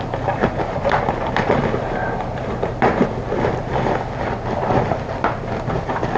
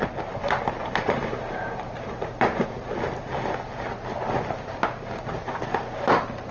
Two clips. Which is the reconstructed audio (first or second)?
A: first